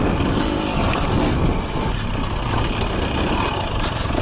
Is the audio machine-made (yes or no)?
no